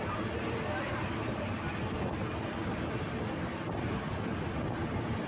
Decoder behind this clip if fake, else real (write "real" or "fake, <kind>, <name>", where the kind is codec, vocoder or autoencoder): real